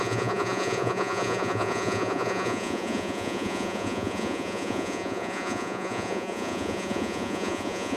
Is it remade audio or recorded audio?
remade